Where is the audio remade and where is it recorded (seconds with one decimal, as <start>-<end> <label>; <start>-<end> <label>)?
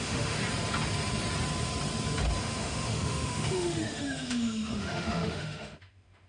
0.0-0.4 remade; 0.4-2.4 recorded; 2.4-6.3 remade